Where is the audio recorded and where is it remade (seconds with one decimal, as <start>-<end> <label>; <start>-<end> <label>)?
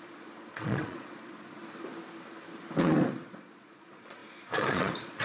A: 0.0-1.6 remade; 1.6-2.8 recorded; 2.8-5.2 remade